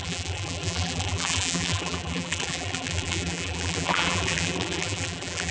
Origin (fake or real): fake